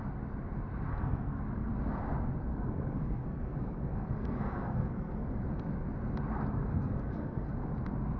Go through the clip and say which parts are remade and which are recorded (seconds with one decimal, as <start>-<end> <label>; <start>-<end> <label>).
0.0-0.9 recorded; 0.9-1.7 remade; 1.7-2.5 recorded; 2.5-5.4 remade; 5.4-6.7 recorded; 6.7-7.5 remade; 7.5-8.2 recorded